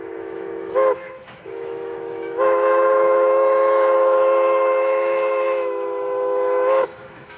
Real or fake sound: fake